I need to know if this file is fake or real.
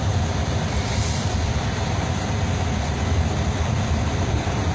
fake